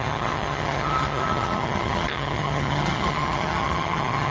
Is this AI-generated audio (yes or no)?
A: yes